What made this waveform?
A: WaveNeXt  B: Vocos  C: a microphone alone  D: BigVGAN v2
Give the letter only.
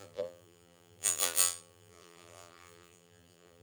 D